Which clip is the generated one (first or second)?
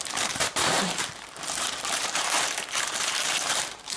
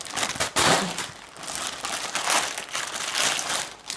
first